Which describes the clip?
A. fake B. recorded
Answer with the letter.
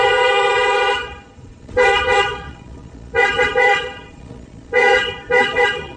A